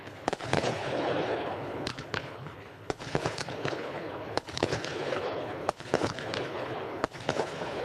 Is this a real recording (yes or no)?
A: no